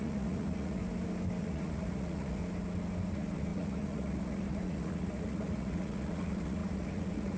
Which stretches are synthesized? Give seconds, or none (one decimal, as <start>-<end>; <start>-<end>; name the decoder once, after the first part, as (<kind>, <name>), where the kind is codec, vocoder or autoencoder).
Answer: 0.0-0.8 (vocoder, Vocos); 1.4-2.4; 3.1-7.4